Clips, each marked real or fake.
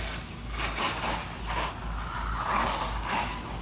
real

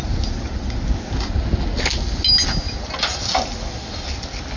real